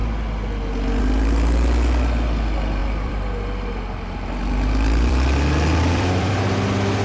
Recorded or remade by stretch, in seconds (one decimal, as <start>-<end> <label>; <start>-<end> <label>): 0.0-2.8 recorded; 2.8-6.3 remade; 6.3-7.0 recorded